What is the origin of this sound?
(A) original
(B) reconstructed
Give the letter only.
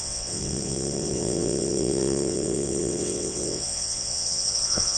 B